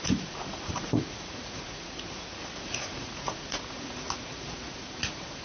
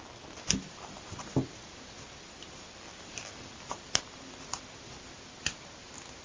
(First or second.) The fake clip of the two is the first